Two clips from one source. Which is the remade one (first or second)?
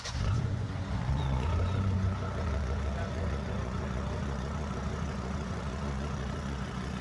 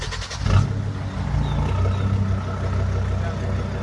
first